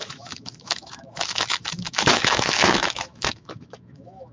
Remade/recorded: remade